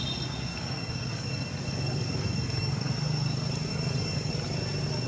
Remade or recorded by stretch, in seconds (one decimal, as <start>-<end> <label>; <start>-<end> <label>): 0.0-0.5 recorded; 0.5-2.9 remade; 2.9-3.7 recorded; 3.7-4.3 remade; 4.3-5.1 recorded